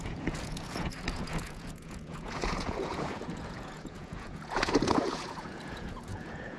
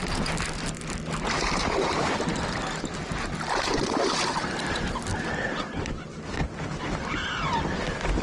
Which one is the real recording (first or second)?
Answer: second